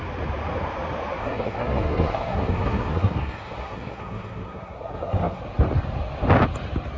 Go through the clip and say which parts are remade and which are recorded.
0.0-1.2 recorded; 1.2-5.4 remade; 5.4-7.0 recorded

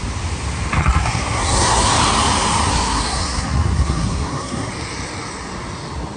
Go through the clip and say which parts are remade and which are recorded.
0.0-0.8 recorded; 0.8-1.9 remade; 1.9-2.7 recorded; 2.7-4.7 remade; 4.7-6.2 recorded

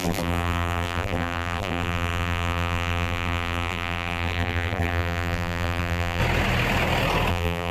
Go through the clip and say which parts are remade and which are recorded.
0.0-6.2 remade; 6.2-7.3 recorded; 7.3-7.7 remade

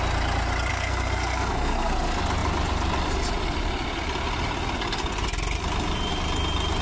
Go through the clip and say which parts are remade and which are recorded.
0.0-0.7 recorded; 0.7-1.9 remade; 1.9-6.8 recorded

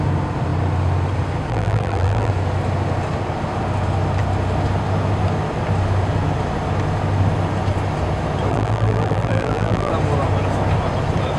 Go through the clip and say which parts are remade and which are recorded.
0.0-1.5 recorded; 1.5-2.3 remade; 2.3-8.5 recorded; 8.5-9.9 remade; 9.9-11.4 recorded